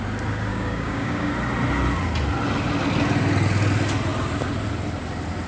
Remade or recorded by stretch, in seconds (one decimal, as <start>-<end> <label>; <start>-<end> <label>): 0.0-0.5 recorded; 0.5-1.3 remade; 1.3-5.5 recorded

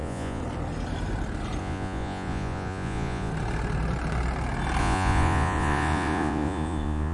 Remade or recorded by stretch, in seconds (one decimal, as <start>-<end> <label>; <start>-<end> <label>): 0.0-0.4 remade; 0.4-1.6 recorded; 1.6-3.3 remade; 3.3-4.8 recorded; 4.8-7.1 remade

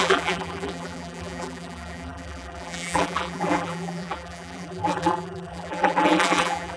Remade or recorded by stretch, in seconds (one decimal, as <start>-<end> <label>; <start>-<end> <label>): 0.0-6.8 remade

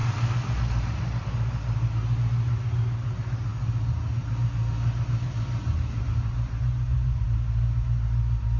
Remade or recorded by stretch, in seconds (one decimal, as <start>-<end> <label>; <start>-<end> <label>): 0.0-6.6 recorded; 6.6-7.2 remade; 7.2-8.6 recorded

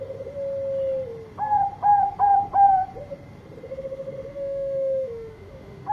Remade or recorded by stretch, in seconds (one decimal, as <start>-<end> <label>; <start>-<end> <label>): 0.0-3.7 recorded; 3.7-5.9 remade

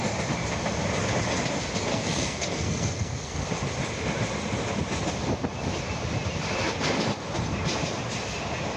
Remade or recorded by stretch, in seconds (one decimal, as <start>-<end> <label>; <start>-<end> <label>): 0.0-1.9 recorded; 1.9-3.5 remade; 3.5-8.8 recorded

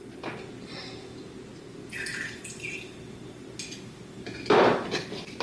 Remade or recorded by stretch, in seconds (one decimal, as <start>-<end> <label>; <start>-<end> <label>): 0.0-5.4 recorded

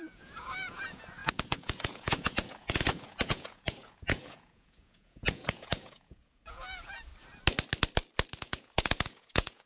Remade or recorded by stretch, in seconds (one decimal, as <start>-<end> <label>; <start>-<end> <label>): 0.0-7.1 remade; 7.1-8.4 recorded; 8.4-9.7 remade